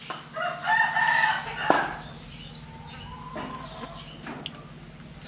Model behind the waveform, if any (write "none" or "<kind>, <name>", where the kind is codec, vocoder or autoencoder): none